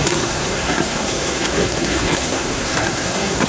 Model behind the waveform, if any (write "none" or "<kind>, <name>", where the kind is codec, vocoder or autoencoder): codec, SNAC